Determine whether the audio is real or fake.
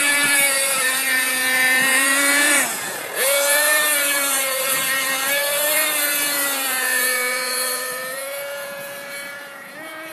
fake